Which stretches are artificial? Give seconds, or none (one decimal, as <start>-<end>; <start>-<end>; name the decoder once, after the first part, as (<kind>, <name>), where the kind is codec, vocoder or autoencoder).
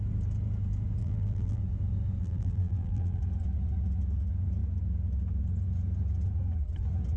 1.0-1.6 (vocoder, BigVGAN v2); 2.2-3.2